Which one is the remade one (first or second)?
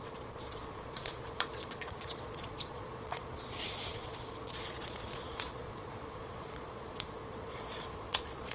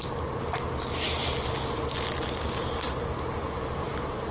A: first